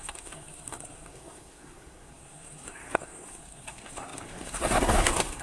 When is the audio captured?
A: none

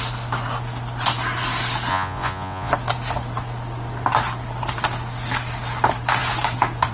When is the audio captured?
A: 0.0-1.9; 2.7-6.9